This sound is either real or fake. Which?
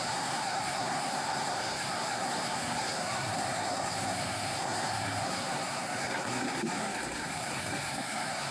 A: fake